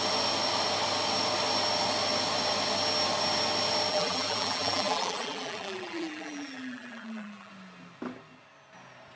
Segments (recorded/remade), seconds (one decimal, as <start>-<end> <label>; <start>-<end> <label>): 0.0-3.9 recorded; 3.9-7.5 remade; 7.5-9.2 recorded